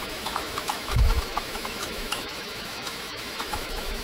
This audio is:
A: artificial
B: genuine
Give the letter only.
A